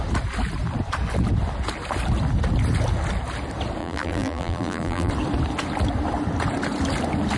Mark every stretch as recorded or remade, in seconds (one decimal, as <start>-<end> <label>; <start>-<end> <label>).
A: 0.0-3.8 recorded; 3.8-5.1 remade; 5.1-7.4 recorded